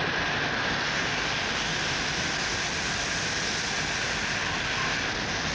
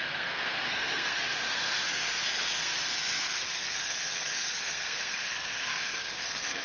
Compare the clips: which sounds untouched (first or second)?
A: first